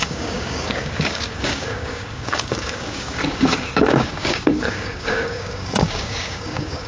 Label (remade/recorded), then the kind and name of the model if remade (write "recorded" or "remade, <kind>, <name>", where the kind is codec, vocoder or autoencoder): remade, codec, DAC